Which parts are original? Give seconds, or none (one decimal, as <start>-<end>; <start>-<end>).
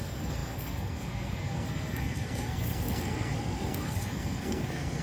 none